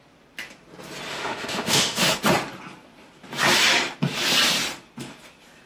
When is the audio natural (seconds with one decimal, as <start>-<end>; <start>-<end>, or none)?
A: 0.0-1.1; 2.1-5.7